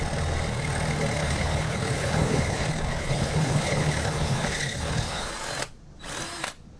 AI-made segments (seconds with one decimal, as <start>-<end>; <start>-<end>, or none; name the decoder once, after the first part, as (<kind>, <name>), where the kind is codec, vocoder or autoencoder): 1.2-5.3 (codec, HILCodec)